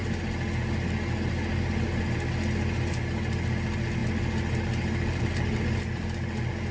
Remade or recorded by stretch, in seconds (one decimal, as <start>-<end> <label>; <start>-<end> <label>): 0.0-6.7 recorded